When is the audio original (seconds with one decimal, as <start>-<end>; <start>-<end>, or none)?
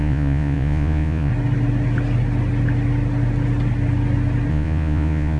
1.3-4.5